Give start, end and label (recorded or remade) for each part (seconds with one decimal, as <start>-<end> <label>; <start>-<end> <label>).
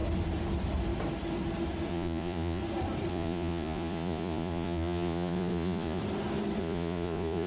0.0-1.9 recorded; 1.9-2.6 remade; 2.6-3.1 recorded; 3.1-6.0 remade; 6.0-6.6 recorded; 6.6-7.5 remade